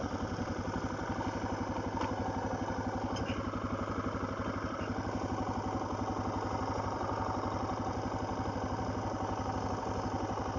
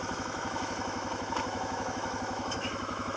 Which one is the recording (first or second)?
first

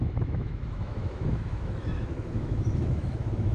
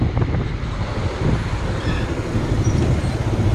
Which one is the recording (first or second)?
second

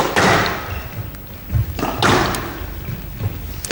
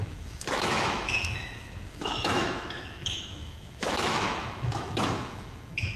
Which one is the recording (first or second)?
first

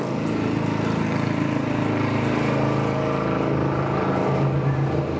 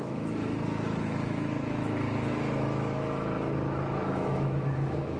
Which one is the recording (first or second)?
first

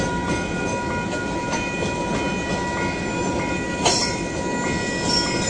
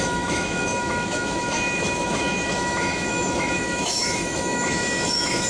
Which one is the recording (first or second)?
first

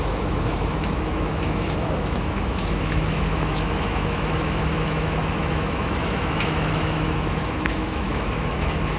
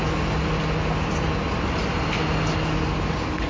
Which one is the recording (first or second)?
second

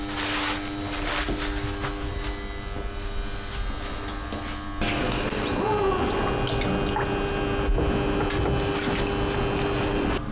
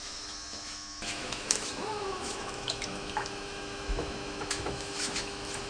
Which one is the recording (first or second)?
first